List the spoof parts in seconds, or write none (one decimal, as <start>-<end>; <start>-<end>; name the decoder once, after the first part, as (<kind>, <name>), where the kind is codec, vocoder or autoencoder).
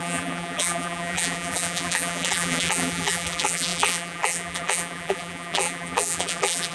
0.0-6.7 (vocoder, BigVGAN v2)